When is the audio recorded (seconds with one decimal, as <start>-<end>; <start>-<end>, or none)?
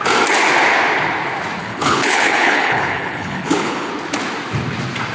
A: 0.0-1.6; 3.9-5.1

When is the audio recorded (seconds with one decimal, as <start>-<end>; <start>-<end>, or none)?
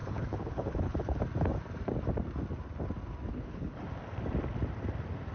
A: 1.2-3.3; 3.8-5.3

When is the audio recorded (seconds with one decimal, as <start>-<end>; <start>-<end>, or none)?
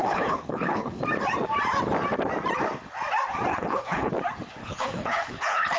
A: 1.0-3.5; 4.1-4.6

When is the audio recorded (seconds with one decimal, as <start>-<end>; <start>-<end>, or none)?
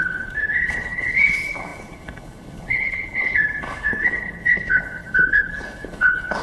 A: none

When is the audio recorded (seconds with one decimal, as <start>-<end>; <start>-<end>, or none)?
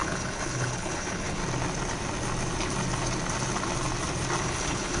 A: 1.4-4.4